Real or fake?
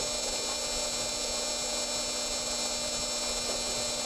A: real